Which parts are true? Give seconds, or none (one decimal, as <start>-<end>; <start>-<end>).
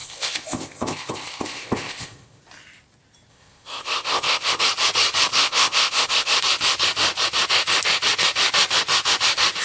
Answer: 2.4-3.3; 4.6-5.3; 6.4-9.6